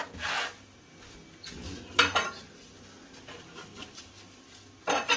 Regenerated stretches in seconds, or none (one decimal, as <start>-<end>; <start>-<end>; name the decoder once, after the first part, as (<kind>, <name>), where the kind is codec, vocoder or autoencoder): none